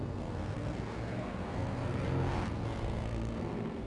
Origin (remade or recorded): remade